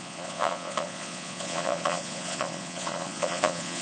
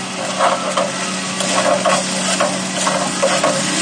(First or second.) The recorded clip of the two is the second